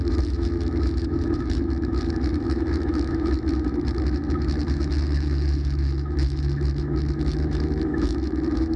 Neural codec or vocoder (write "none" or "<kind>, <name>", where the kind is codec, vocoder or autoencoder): autoencoder, DAC-VAE